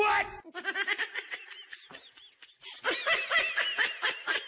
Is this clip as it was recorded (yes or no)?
yes